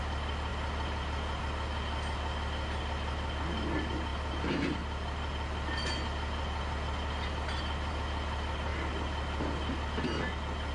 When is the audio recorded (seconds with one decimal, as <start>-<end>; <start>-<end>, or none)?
0.0-10.7